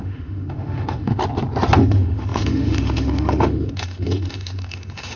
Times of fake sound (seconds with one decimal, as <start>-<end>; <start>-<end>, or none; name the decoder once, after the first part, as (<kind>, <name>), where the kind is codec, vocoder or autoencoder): 0.0-1.2 (autoencoder, DAC-VAE); 1.8-5.2